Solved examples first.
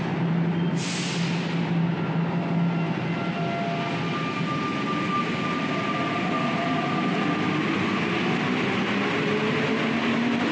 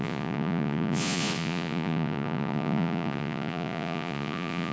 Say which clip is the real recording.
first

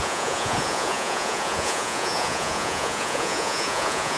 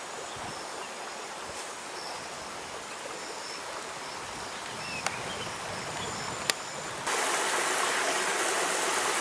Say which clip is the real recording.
second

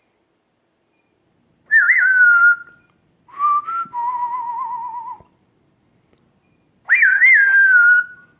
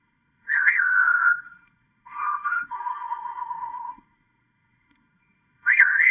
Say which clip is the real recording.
first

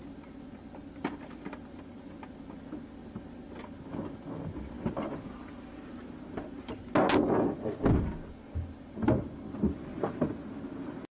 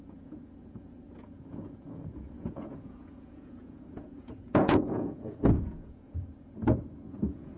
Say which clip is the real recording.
first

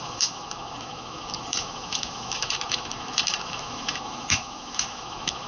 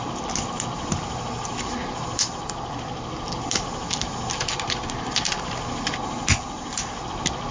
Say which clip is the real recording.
second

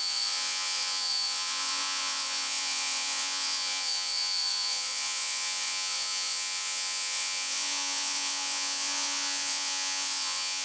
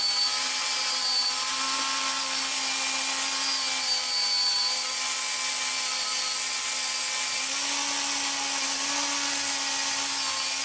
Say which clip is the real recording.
second